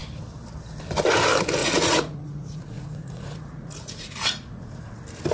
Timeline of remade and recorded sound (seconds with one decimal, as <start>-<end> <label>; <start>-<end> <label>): 0.0-1.6 recorded; 1.6-4.8 remade; 4.8-5.3 recorded